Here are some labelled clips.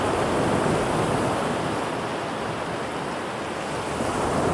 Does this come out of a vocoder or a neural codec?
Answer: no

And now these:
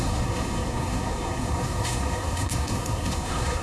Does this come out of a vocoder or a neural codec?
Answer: yes